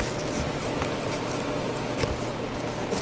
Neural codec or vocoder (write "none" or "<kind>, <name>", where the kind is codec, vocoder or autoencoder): none